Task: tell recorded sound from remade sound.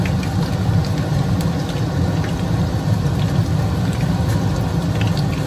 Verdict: recorded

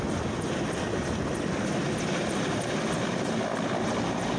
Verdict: recorded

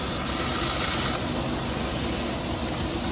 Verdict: recorded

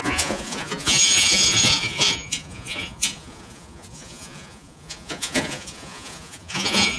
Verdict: remade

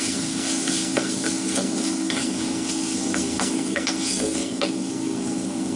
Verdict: remade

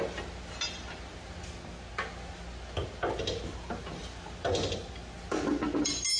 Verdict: recorded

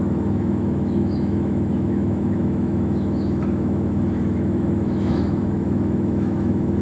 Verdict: remade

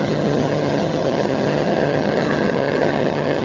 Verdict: remade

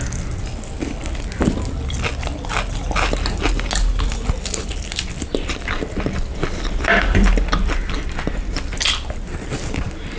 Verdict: recorded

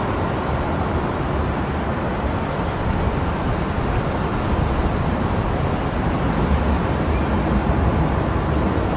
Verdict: recorded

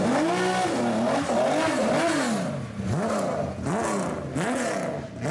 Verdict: recorded